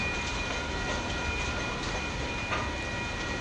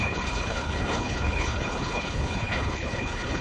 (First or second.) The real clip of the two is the first